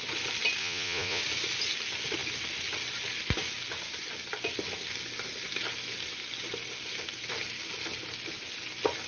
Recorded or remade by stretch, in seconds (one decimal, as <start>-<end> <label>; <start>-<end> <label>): 0.0-0.6 recorded; 0.6-1.2 remade; 1.2-9.1 recorded